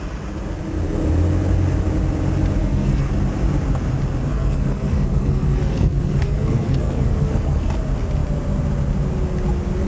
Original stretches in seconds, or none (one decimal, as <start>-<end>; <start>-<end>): 0.0-2.6; 3.1-4.3; 7.7-9.9

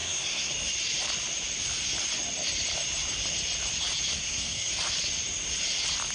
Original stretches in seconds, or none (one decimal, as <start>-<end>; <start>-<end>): 0.5-4.1; 4.7-6.1